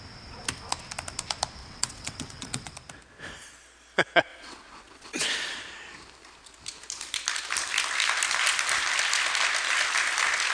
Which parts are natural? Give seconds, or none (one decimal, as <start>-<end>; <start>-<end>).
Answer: 0.0-1.6; 2.7-4.3; 5.3-10.5